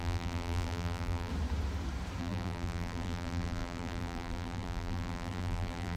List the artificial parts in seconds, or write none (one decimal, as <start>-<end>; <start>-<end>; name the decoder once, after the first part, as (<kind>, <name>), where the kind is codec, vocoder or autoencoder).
0.0-1.3 (vocoder, BigVGAN v2); 2.2-6.0